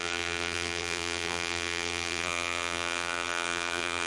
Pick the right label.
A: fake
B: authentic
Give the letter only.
A